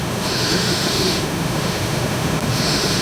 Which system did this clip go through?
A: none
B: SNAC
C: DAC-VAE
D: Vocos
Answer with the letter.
C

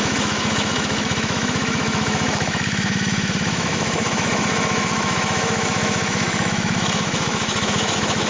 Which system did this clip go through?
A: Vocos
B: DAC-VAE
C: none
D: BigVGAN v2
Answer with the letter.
B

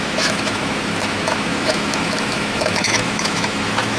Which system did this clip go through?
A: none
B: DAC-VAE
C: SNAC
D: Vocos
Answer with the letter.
B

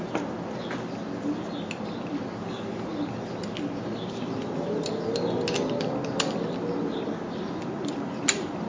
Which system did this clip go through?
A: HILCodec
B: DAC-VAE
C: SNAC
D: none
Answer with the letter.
D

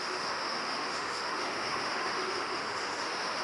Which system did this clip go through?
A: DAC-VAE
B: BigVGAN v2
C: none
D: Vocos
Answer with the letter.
A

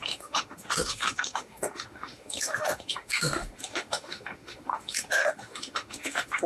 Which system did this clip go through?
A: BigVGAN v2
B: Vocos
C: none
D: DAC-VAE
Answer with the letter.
D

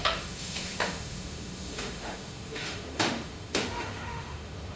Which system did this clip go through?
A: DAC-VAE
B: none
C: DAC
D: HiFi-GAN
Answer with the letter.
A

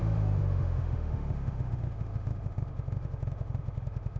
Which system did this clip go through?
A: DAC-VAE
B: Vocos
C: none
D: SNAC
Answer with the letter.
A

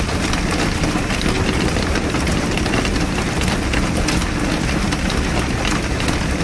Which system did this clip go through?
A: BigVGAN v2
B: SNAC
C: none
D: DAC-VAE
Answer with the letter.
C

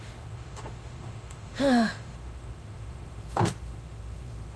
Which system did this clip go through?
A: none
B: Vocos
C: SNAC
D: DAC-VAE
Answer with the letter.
D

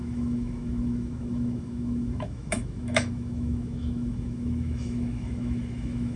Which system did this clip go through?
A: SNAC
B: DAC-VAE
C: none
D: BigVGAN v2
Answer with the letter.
B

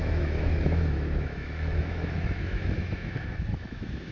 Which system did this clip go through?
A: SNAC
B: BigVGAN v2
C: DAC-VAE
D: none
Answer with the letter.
C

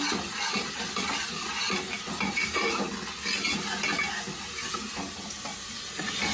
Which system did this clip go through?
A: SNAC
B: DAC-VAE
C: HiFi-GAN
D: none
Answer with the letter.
D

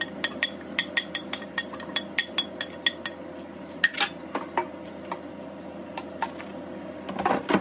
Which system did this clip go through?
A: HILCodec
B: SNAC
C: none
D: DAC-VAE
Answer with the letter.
C